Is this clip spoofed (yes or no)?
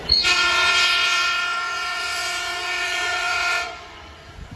yes